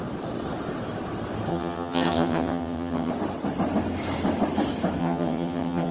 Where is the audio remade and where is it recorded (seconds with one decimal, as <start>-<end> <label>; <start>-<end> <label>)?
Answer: 0.0-1.5 recorded; 1.5-3.1 remade; 3.1-5.0 recorded; 5.0-5.9 remade